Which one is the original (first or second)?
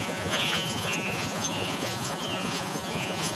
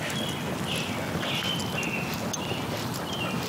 second